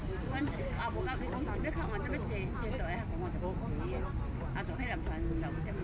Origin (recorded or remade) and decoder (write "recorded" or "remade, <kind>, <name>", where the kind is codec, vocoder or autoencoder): recorded